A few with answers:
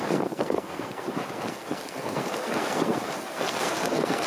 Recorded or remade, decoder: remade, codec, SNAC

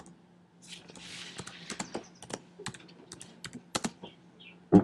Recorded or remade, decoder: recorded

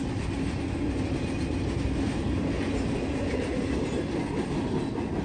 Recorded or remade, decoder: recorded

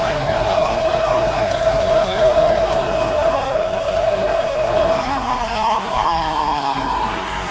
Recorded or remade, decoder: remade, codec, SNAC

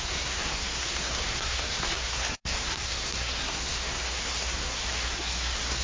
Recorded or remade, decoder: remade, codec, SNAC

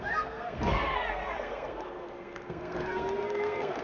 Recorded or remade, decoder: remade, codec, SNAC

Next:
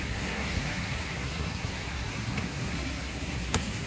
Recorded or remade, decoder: remade, codec, SNAC